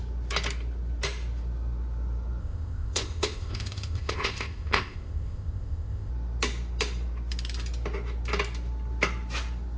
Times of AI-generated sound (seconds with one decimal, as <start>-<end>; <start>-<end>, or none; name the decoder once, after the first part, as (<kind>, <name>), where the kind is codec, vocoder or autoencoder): 2.4-6.1 (codec, ZipCodec)